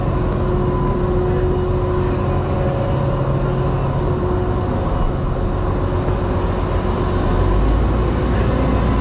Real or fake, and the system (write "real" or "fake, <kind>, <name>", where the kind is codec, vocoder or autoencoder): real